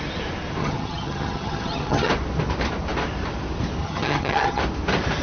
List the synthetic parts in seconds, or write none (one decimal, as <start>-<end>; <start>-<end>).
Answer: 0.6-2.1; 3.8-4.6